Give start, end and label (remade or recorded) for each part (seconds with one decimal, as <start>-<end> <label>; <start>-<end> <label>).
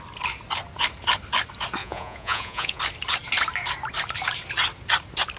0.0-1.8 recorded; 1.8-2.8 remade; 2.8-5.4 recorded